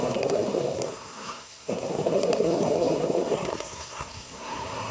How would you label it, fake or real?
fake